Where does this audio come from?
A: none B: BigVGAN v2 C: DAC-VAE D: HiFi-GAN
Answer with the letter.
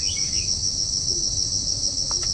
C